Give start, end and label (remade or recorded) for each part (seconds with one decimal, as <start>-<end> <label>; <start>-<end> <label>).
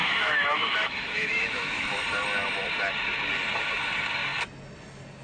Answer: 0.0-2.0 remade; 2.0-5.2 recorded